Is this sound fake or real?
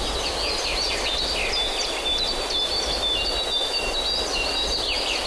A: real